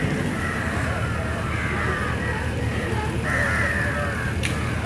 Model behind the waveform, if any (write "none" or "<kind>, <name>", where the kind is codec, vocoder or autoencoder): none